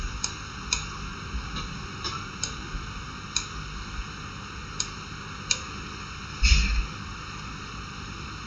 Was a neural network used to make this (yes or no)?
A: no